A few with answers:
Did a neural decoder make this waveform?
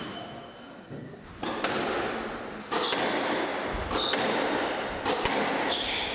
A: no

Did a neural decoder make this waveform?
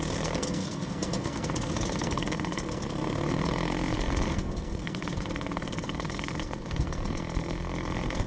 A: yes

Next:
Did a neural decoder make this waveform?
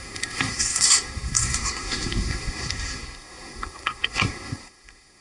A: yes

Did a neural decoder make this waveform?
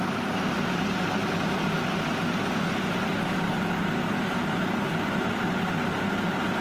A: no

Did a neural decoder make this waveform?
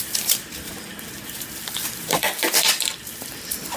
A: yes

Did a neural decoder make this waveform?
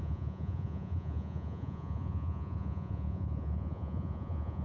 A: yes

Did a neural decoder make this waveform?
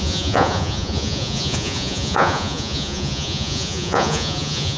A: yes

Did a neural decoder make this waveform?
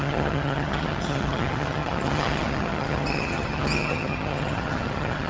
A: yes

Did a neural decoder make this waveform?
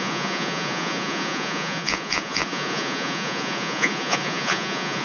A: yes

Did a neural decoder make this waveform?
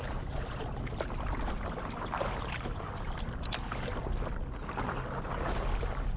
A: no